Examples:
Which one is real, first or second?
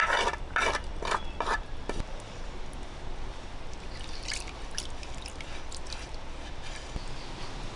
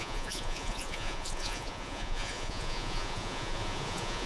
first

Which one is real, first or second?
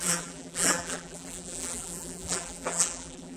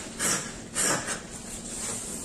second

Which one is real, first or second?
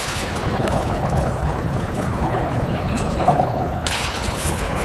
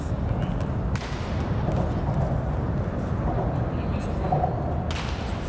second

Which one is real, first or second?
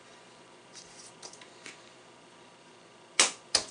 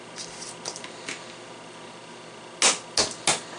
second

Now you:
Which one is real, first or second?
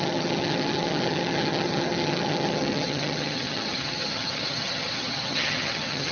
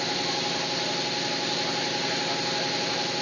second